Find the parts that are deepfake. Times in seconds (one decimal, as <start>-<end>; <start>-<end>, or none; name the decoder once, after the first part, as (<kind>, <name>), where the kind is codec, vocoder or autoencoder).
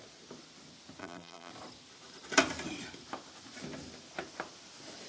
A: 1.0-1.5 (vocoder, BigVGAN v2)